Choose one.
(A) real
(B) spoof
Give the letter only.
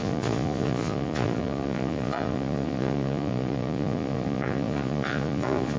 B